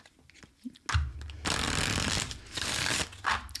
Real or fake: real